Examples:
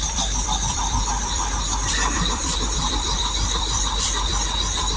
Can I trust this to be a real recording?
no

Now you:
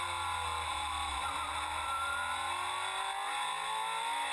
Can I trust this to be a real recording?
yes